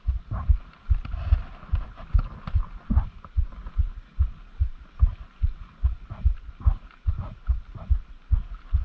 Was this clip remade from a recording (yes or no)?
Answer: no